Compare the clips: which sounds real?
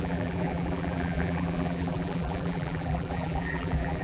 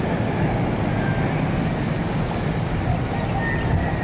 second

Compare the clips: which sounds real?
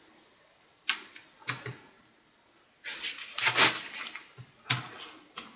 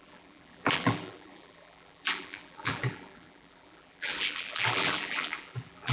first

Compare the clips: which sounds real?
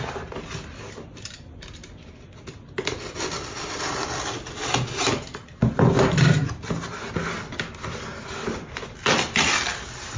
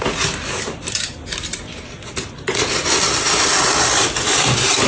first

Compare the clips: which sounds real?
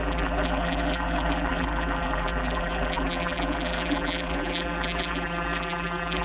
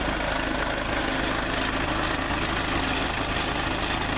second